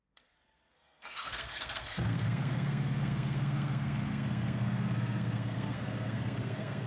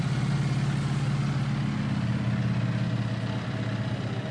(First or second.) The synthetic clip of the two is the first